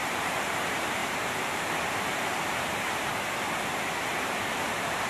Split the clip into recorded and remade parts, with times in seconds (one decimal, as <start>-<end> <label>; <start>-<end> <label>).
0.0-3.1 remade; 3.1-4.5 recorded; 4.5-5.1 remade